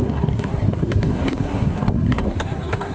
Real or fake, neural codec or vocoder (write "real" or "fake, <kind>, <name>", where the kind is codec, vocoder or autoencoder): fake, codec, SNAC